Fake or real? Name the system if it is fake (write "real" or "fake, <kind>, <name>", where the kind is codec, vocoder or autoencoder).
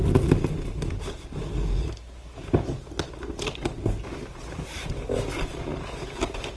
real